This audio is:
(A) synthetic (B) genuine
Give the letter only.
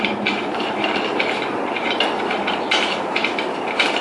A